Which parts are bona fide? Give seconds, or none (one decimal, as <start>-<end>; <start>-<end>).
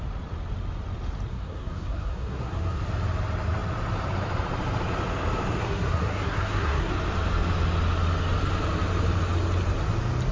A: 0.0-1.3; 2.8-5.6; 6.9-10.3